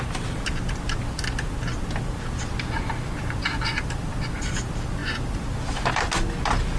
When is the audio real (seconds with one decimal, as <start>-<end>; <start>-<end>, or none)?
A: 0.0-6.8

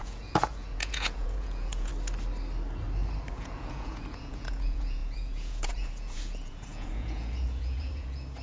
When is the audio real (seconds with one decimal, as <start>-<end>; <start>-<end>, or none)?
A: 1.9-3.3

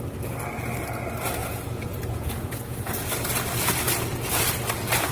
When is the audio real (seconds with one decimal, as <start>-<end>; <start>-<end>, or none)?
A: 0.0-1.4; 3.0-5.1

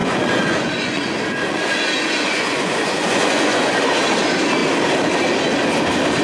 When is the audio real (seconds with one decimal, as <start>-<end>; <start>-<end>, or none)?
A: 3.7-6.2